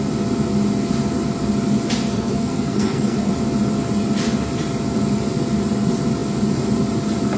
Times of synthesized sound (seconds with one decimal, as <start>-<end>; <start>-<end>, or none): 2.0-3.3